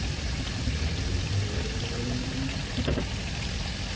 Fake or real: real